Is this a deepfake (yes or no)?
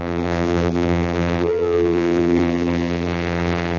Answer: yes